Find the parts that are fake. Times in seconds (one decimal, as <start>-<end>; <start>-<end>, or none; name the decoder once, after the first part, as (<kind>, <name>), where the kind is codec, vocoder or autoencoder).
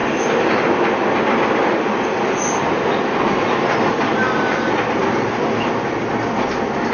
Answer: none